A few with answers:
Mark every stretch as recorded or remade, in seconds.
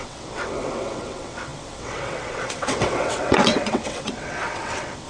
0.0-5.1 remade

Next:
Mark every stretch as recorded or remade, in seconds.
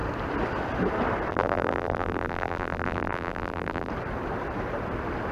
0.0-1.3 recorded; 1.3-3.9 remade; 3.9-5.3 recorded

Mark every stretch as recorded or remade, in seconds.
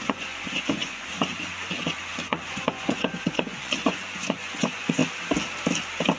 0.0-5.0 remade; 5.0-6.2 recorded